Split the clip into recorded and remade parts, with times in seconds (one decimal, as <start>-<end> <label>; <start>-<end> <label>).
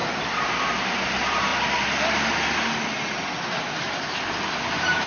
0.0-0.8 recorded; 0.8-1.5 remade; 1.5-4.6 recorded; 4.6-5.1 remade